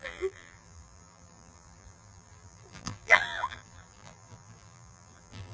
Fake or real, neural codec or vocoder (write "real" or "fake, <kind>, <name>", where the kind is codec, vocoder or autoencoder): fake, vocoder, BigVGAN v2